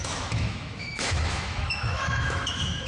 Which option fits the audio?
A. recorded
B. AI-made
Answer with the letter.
B